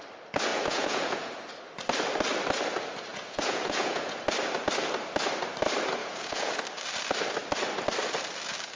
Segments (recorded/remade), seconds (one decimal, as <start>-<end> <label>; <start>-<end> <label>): 0.0-0.5 recorded; 0.5-1.4 remade; 1.4-3.1 recorded; 3.1-4.2 remade; 4.2-6.0 recorded; 6.0-6.6 remade; 6.6-8.8 recorded